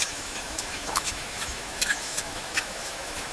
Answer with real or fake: fake